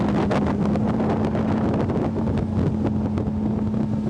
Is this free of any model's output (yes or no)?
yes